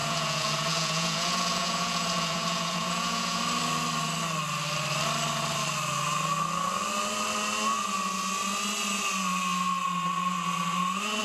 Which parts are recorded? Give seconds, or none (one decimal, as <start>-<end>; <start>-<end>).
3.4-11.2